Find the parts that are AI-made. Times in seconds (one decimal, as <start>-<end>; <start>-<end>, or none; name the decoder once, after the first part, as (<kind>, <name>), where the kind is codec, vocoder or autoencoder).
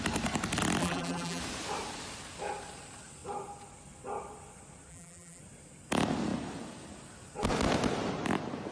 0.8-1.4 (vocoder, BigVGAN v2); 4.9-5.4